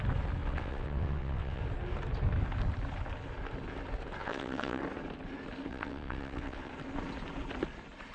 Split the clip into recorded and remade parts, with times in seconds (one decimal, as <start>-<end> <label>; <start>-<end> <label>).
0.0-0.4 recorded; 0.4-1.6 remade; 1.6-4.2 recorded; 4.2-4.8 remade; 4.8-5.7 recorded; 5.7-6.7 remade; 6.7-8.1 recorded